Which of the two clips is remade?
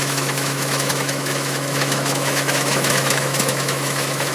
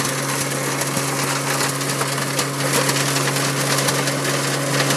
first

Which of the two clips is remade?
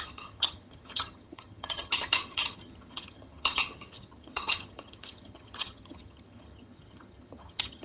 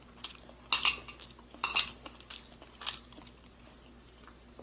first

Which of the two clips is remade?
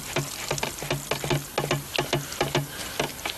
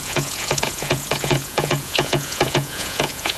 second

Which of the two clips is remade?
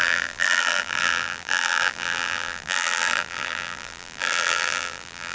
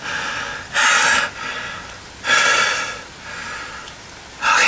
first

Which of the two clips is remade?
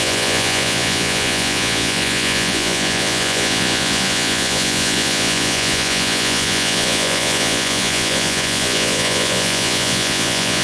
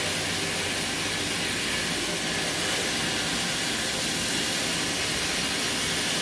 first